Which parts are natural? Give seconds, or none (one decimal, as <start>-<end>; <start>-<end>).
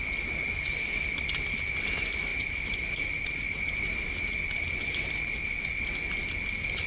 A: 0.0-6.9